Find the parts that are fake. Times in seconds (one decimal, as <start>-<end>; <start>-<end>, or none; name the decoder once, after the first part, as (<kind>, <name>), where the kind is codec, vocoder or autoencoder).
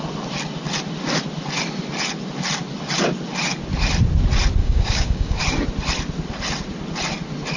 4.6-5.4 (codec, DAC)